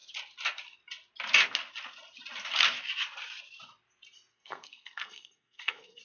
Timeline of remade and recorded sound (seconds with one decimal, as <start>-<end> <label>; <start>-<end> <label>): 0.0-4.3 recorded; 4.3-6.0 remade